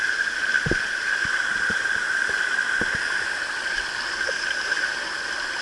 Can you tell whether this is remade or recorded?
recorded